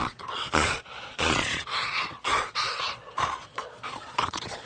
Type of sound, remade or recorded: remade